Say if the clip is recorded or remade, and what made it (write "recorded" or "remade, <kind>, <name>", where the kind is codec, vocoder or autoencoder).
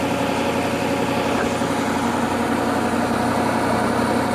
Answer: recorded